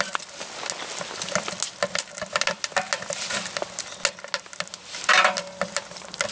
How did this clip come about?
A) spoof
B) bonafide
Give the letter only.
B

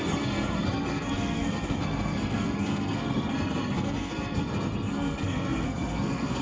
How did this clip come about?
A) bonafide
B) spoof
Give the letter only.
B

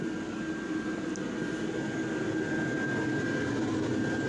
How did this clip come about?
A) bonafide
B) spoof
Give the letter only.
A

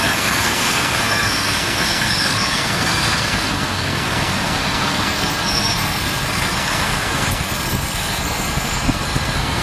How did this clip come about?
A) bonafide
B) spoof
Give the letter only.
B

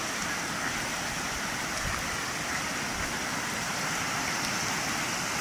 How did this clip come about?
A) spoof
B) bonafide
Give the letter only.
B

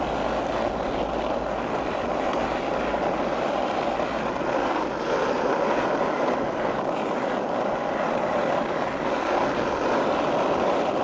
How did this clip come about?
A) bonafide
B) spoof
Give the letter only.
A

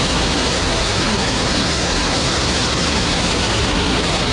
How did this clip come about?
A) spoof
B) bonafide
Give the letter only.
A